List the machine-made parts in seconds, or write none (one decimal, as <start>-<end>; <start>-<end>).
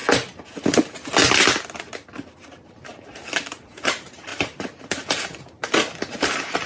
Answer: 2.1-6.7